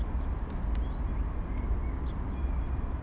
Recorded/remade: recorded